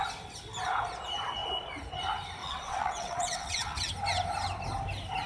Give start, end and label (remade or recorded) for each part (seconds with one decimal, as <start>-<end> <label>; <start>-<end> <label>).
0.0-2.4 recorded; 2.4-3.9 remade; 3.9-5.3 recorded